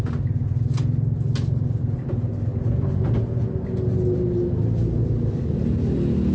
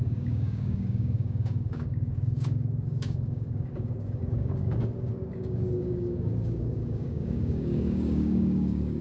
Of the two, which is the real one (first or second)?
first